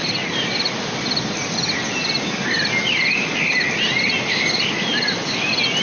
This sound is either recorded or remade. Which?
recorded